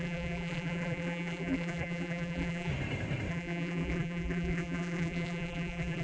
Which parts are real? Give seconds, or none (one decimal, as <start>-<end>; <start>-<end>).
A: 2.7-3.3